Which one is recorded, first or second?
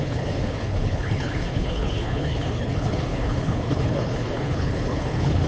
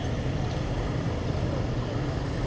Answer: second